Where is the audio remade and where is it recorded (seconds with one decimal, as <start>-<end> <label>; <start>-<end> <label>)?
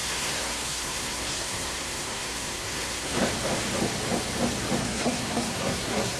0.0-3.2 remade; 3.2-4.8 recorded; 4.8-6.2 remade